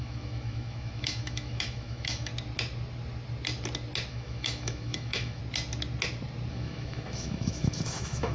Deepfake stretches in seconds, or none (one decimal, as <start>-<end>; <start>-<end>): 0.0-2.3; 4.1-5.4; 6.5-8.3